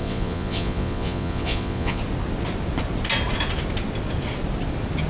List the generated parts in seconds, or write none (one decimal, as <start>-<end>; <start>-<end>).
0.0-2.0